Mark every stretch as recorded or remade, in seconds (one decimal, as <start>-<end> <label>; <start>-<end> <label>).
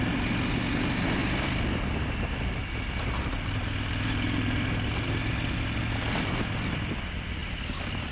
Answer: 0.0-8.1 recorded